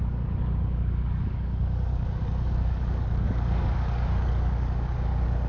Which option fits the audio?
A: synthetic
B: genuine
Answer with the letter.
A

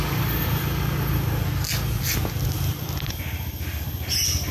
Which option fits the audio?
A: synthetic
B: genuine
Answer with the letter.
B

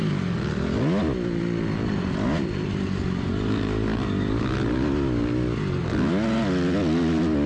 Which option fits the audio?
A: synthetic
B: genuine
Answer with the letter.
B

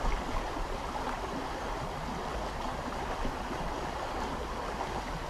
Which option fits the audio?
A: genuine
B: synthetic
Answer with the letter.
A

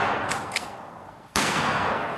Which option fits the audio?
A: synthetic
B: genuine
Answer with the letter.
A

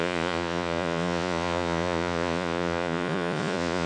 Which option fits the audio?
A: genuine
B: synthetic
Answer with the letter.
B